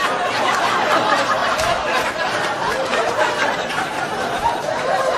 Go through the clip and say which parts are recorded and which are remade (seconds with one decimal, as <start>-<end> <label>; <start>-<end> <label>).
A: 0.0-5.2 remade